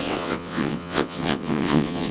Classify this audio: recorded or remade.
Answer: remade